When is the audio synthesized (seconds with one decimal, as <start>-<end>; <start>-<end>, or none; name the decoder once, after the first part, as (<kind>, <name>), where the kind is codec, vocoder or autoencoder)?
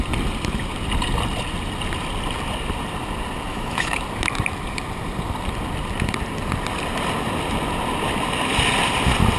3.5-4.0 (autoencoder, DAC-VAE)